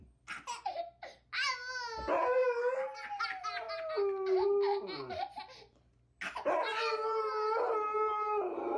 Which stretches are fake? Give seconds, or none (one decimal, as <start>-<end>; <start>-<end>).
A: 6.7-8.8